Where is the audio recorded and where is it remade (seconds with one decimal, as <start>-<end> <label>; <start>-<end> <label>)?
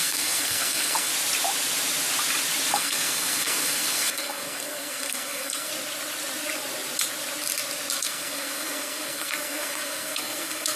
0.0-1.1 remade; 1.1-2.7 recorded; 2.7-5.7 remade; 5.7-8.0 recorded; 8.0-10.8 remade